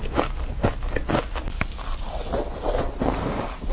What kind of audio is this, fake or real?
real